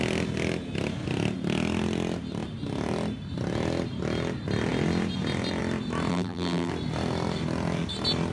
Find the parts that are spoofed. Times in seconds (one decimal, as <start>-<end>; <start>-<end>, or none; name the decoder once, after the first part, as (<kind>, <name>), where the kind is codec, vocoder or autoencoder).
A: 6.1-6.7 (vocoder, BigVGAN v2)